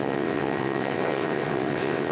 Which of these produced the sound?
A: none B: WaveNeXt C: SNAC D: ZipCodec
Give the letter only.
B